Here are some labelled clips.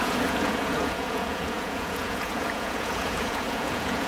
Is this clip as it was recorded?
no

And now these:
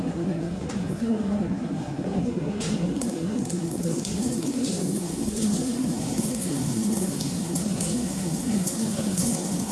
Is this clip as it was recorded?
no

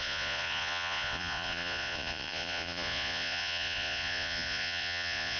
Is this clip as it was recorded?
no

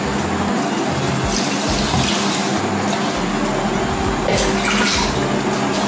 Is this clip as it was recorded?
yes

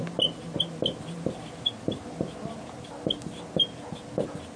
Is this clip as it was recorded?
yes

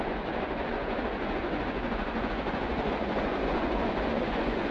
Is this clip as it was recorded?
no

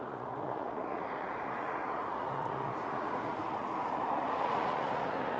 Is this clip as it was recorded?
no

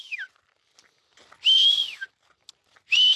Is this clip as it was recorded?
yes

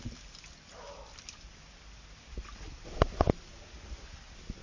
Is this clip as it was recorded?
yes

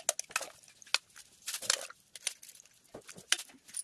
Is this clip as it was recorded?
yes